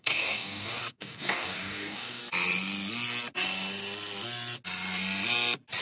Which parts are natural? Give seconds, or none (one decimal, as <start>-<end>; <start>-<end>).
2.2-5.8